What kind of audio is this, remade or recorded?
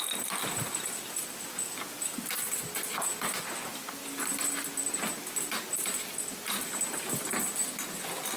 recorded